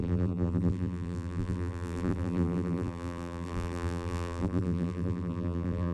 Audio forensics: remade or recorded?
remade